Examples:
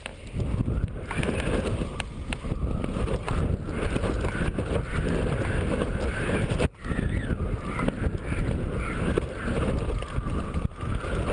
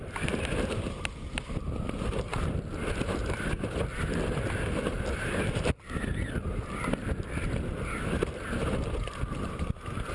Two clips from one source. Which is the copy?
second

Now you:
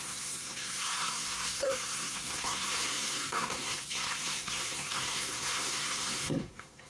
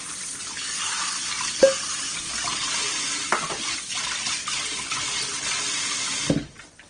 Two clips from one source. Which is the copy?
first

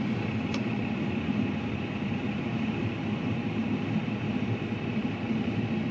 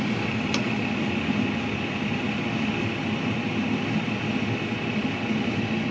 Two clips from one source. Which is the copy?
first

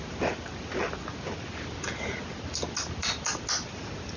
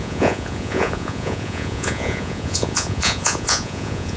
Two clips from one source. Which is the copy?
second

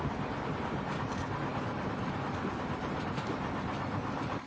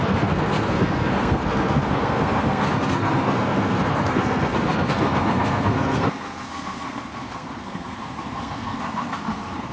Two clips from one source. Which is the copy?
second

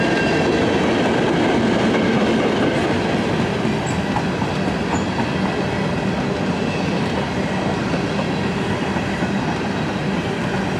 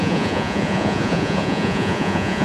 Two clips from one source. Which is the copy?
second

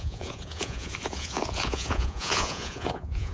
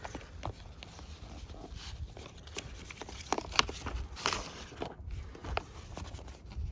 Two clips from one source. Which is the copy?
first